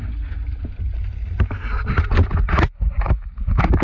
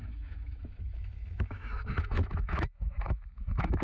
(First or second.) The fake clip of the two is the second